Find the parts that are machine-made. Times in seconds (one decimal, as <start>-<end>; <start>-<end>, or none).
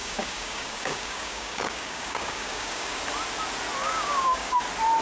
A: 0.0-3.0; 3.8-4.6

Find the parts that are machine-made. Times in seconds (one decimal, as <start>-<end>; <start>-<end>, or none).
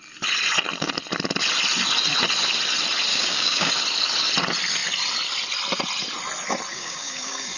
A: 3.1-3.7; 6.7-7.6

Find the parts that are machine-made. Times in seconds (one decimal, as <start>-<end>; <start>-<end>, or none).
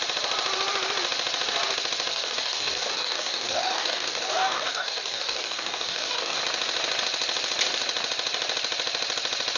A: 2.1-6.4